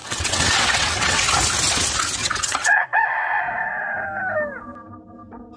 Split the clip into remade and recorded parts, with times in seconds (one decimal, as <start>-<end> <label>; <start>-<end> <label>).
0.0-1.2 remade; 1.2-2.2 recorded; 2.2-3.4 remade; 3.4-5.6 recorded